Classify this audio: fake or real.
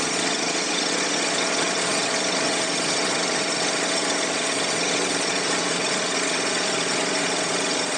fake